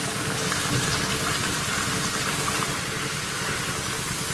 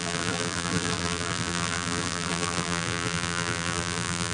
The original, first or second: first